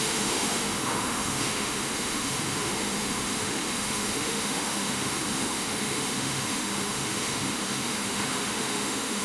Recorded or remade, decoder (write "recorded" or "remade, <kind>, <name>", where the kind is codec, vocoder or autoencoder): remade, autoencoder, DAC-VAE